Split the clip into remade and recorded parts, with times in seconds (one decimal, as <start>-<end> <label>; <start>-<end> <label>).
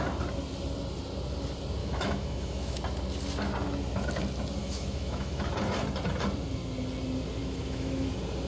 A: 0.0-1.8 recorded; 1.8-2.8 remade; 2.8-4.6 recorded; 4.6-5.5 remade; 5.5-7.4 recorded; 7.4-8.1 remade; 8.1-8.5 recorded